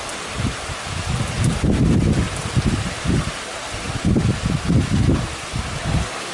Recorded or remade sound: recorded